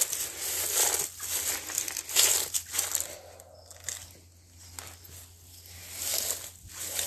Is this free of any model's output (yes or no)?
yes